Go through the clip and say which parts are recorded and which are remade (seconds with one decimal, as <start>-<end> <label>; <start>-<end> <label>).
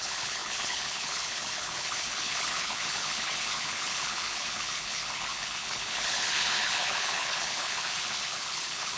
0.0-9.0 remade